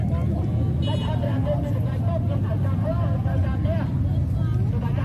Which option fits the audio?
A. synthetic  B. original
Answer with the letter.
B